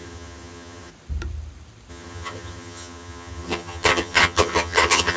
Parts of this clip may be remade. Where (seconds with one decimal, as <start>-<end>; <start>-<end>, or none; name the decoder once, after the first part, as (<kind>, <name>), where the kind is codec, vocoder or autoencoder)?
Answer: 0.0-0.9 (vocoder, HiFi-GAN); 1.9-5.2